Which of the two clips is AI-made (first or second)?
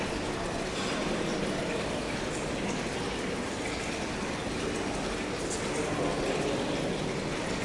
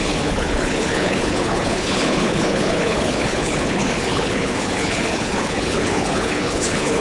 second